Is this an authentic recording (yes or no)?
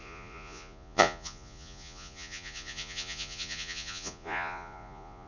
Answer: no